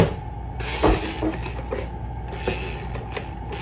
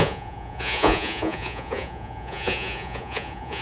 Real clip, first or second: first